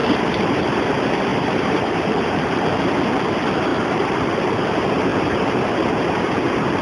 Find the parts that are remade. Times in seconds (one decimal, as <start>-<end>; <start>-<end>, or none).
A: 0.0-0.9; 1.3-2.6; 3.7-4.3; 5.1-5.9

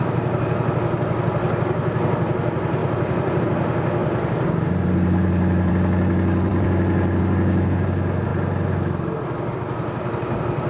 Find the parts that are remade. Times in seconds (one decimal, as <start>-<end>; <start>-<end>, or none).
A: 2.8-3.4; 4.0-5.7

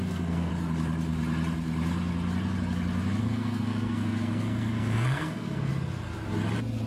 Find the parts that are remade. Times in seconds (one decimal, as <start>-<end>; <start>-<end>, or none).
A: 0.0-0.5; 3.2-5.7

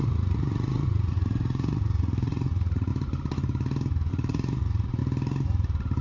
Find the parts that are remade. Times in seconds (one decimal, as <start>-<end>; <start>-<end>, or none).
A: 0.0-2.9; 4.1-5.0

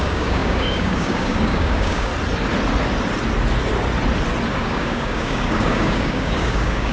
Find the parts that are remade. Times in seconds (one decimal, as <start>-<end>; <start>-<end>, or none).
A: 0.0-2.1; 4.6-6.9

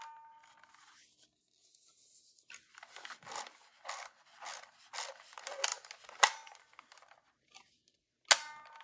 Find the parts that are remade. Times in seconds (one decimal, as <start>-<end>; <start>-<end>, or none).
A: none

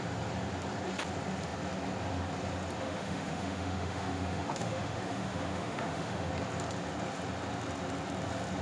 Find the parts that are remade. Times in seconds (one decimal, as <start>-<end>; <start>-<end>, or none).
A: 2.8-6.3